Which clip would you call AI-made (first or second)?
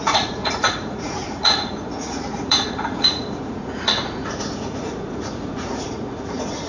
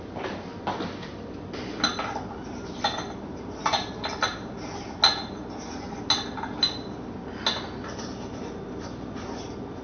first